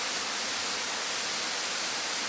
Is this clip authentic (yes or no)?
yes